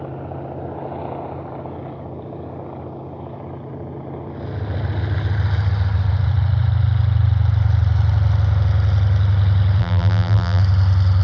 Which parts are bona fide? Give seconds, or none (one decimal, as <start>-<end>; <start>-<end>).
0.0-9.8; 10.6-11.2